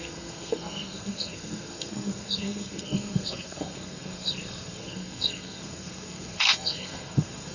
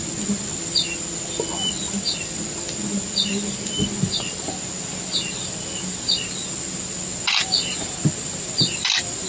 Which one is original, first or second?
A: second